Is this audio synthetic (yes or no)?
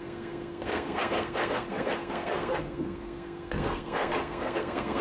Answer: yes